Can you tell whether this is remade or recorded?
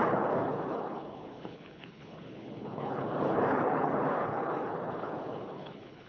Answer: remade